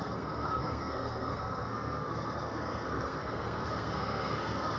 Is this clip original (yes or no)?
no